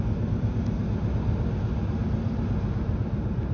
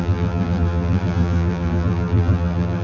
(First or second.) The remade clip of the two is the second